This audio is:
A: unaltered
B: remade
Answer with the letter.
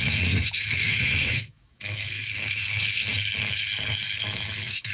B